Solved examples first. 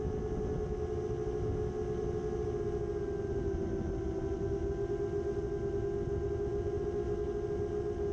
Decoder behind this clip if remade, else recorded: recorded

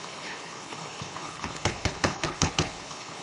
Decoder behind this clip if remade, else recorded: remade, codec, HILCodec